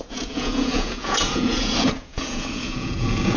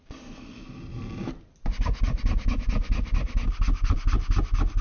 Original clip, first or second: second